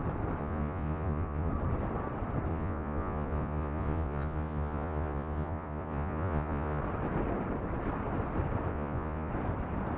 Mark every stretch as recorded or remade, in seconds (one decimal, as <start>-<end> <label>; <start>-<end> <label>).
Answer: 0.0-0.4 recorded; 0.4-1.5 remade; 1.5-2.5 recorded; 2.5-6.8 remade; 6.8-8.7 recorded; 8.7-9.3 remade; 9.3-10.0 recorded